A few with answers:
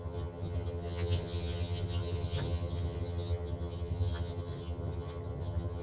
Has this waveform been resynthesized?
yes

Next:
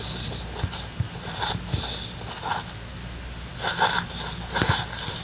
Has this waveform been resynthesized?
no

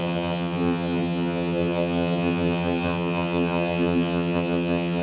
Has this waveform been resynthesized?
yes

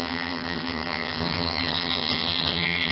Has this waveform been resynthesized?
yes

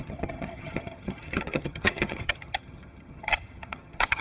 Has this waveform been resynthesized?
yes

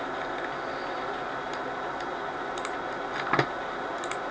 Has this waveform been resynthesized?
no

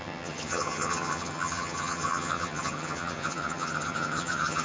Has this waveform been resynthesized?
yes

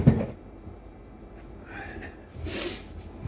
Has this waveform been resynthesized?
no